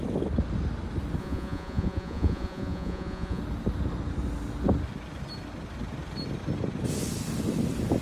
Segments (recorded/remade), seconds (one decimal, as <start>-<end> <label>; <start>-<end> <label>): 0.0-1.2 recorded; 1.2-3.4 remade; 3.4-8.0 recorded